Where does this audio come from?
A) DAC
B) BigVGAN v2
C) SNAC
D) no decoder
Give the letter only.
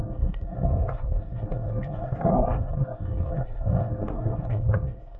C